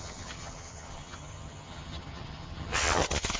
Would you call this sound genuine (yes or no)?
no